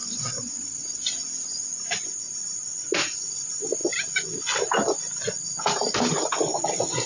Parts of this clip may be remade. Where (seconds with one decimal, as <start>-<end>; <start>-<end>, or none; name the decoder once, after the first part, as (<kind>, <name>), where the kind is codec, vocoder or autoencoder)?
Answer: 0.0-1.2 (vocoder, Vocos)